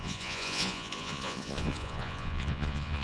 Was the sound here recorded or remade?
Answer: remade